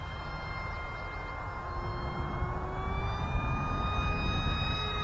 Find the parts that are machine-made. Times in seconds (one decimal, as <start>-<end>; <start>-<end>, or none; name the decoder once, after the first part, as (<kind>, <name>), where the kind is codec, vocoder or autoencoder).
none